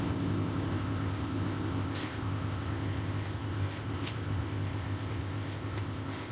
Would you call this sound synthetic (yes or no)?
yes